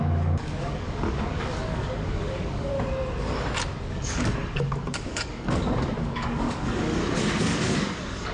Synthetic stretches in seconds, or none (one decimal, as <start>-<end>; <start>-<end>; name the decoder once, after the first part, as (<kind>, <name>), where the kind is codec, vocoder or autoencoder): 0.0-2.7 (codec, DAC); 3.9-8.3